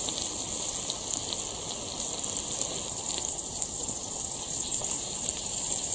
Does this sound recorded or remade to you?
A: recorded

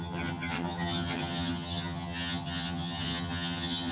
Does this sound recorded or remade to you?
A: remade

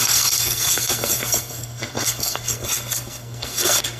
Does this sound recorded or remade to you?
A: remade